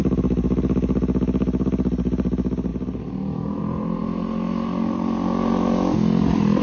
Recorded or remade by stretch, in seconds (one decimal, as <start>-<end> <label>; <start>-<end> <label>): 0.0-6.6 recorded